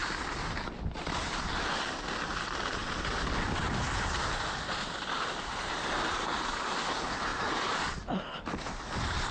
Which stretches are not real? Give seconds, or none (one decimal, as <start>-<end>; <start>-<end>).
7.3-7.8